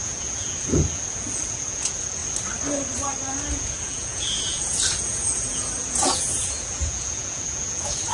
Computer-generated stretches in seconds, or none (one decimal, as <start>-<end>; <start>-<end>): 0.0-2.2; 3.5-8.1